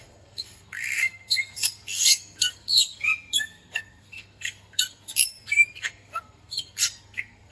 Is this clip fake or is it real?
fake